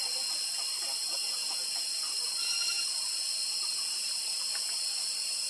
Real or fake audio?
real